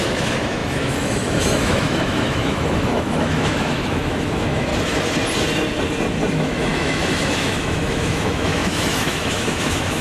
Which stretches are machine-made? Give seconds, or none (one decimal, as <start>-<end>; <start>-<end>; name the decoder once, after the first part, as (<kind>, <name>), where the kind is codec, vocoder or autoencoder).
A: 0.0-4.7 (autoencoder, DAC-VAE); 6.3-10.0